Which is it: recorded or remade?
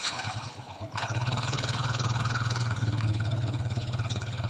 remade